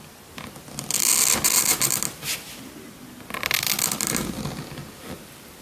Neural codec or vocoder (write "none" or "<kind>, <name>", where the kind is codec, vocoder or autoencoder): none